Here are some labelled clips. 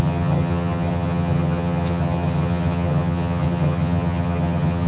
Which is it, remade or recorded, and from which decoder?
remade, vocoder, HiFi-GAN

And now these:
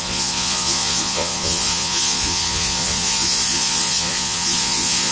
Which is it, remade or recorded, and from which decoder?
remade, vocoder, Vocos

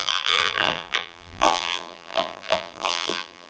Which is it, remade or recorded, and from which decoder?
remade, vocoder, BigVGAN v2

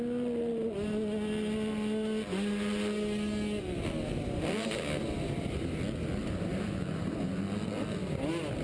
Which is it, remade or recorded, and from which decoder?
recorded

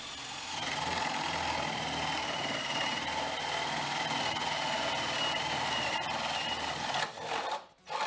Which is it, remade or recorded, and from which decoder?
recorded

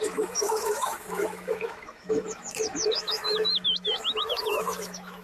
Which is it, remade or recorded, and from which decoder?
remade, autoencoder, DAC-VAE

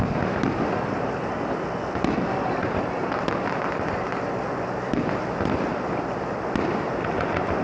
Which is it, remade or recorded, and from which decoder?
recorded